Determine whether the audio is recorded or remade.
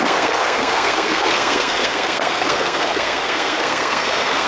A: remade